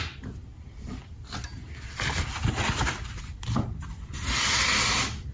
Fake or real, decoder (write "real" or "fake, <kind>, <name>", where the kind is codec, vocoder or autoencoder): real